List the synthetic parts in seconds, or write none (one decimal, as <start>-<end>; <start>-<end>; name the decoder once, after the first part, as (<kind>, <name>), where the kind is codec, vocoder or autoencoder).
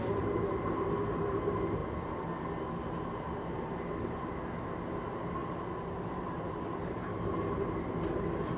none